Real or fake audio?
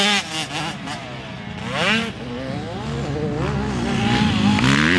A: real